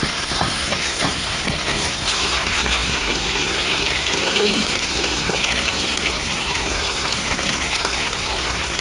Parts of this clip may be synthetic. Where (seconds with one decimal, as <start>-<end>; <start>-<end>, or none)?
0.0-8.8